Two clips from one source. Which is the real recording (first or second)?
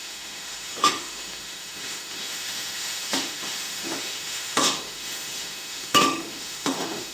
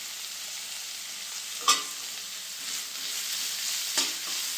second